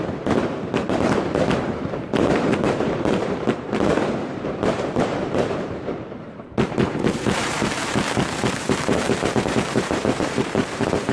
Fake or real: fake